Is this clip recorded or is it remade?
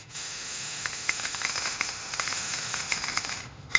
remade